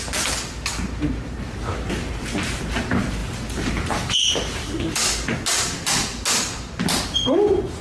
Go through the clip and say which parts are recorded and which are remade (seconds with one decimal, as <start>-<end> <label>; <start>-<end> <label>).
0.0-7.8 recorded